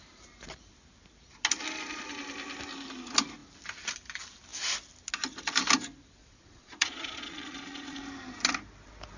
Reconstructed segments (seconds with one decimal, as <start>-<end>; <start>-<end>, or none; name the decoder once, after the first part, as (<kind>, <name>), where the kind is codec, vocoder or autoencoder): 6.2-8.0 (vocoder, Vocos)